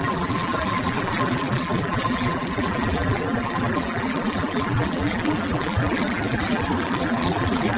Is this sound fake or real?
fake